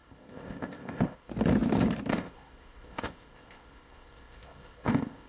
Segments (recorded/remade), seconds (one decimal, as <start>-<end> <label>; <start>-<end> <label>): 0.0-1.3 remade; 1.3-2.1 recorded; 2.1-5.3 remade